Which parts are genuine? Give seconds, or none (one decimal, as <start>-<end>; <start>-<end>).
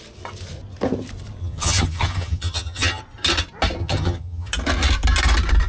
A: 0.0-1.4; 3.0-3.8; 4.5-5.7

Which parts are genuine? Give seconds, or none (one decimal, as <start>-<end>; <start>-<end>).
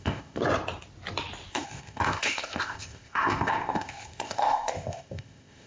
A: 0.4-1.5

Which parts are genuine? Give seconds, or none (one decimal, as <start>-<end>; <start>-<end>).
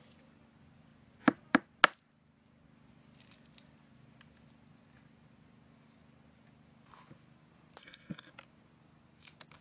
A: 0.0-7.8; 8.3-9.6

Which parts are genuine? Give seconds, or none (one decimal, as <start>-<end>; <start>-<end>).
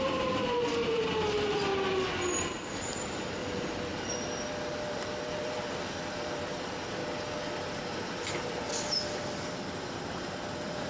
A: 1.7-2.3; 3.4-4.9; 7.0-8.8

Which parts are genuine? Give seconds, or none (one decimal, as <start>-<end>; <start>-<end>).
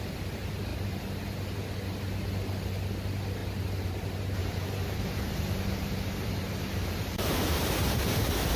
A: 0.0-0.7; 1.2-4.4; 8.0-8.6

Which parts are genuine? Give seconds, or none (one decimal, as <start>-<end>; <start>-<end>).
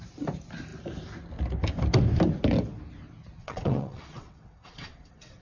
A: 0.0-3.4